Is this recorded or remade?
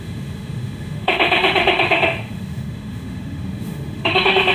remade